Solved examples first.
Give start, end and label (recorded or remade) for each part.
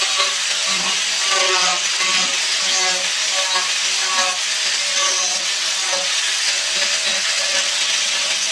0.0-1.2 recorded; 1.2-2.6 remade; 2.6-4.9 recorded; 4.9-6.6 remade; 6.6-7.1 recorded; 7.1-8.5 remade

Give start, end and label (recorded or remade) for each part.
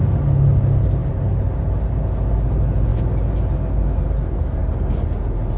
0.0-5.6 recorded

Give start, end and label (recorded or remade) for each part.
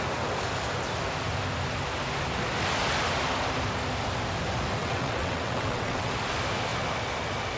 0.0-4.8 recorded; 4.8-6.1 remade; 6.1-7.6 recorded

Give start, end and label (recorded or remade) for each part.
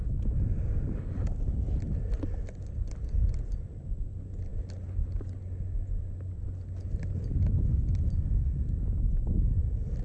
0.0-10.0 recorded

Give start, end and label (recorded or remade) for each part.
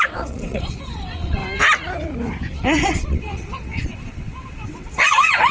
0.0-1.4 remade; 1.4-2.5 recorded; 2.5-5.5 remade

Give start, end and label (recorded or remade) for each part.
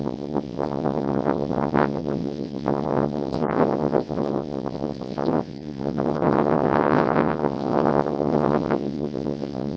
0.0-9.8 remade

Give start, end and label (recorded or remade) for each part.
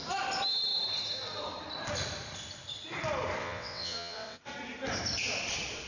0.0-3.4 recorded; 3.4-4.5 remade; 4.5-5.9 recorded